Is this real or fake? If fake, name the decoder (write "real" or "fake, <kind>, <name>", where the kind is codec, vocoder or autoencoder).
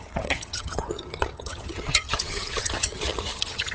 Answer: fake, vocoder, HiFi-GAN